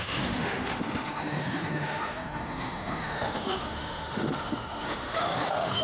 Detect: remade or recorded remade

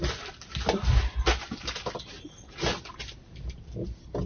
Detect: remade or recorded recorded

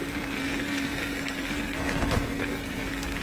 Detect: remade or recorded remade